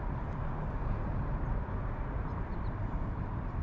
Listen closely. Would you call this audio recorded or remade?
recorded